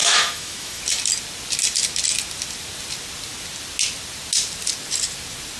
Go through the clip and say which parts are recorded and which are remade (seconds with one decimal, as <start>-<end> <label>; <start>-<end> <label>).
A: 0.0-0.8 remade; 0.8-5.6 recorded